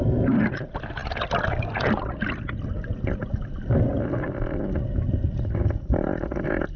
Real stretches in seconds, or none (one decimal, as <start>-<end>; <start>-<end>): 0.0-6.8